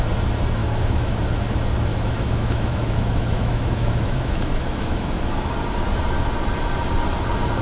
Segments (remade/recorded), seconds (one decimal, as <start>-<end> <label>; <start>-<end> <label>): 0.0-0.6 recorded; 0.6-1.1 remade; 1.1-1.9 recorded; 1.9-5.2 remade; 5.2-7.6 recorded